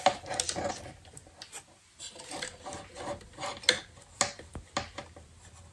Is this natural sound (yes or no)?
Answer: yes